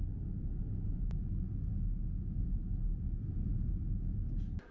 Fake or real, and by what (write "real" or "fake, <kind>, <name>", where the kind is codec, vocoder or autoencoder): real